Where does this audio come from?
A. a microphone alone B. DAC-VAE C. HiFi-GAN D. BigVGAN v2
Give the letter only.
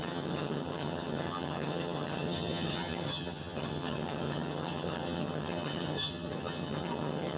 C